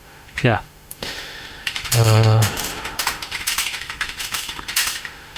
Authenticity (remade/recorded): remade